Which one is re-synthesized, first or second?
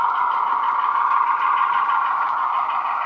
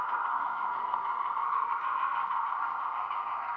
second